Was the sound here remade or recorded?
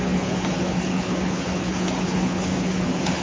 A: remade